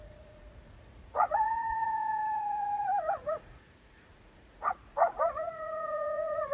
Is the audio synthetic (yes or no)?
yes